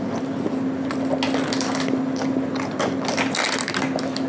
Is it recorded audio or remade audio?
recorded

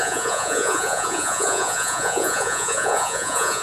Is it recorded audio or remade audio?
remade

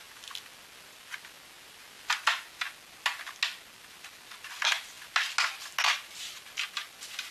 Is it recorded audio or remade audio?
recorded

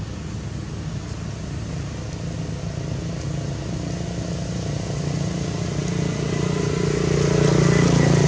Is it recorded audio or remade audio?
recorded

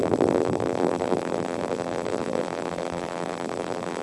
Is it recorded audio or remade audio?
remade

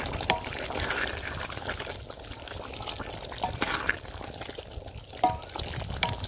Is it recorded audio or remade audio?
recorded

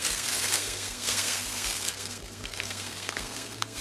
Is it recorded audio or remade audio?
remade